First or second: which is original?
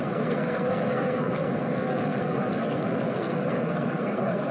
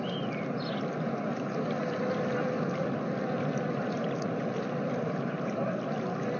second